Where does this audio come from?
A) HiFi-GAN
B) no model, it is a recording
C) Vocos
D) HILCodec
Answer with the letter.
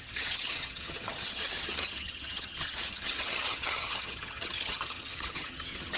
A